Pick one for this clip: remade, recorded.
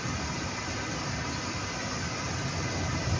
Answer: recorded